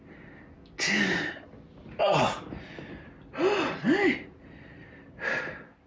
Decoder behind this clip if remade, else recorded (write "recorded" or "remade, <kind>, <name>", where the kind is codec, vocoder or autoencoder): recorded